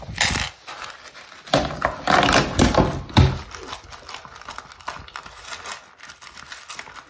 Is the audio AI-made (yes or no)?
no